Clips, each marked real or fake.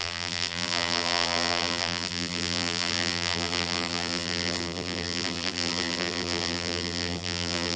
fake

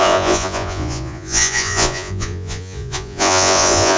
fake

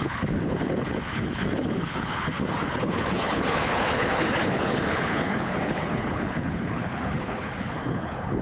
fake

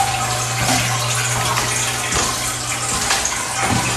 real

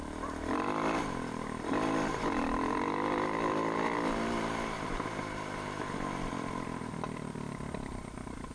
fake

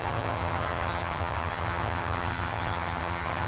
fake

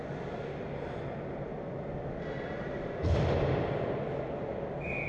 real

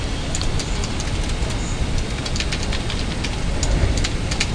real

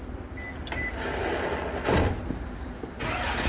real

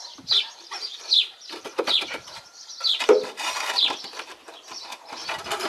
fake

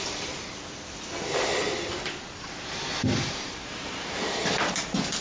real